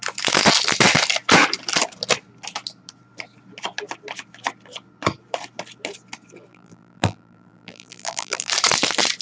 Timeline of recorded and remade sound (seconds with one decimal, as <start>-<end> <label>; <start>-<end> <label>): 0.0-6.5 recorded; 6.5-8.5 remade; 8.5-9.2 recorded